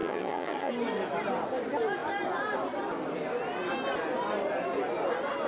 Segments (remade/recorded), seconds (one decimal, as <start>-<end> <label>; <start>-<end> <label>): 0.0-0.7 remade; 0.7-5.5 recorded